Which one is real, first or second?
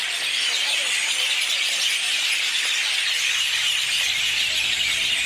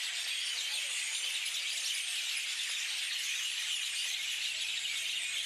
second